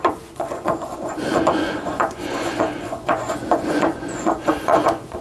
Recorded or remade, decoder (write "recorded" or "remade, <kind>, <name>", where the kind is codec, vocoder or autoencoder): remade, vocoder, Vocos